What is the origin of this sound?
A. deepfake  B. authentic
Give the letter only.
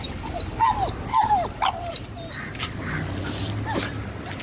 B